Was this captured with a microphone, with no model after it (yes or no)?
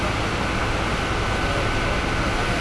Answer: yes